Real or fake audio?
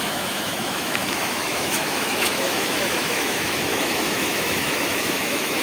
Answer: fake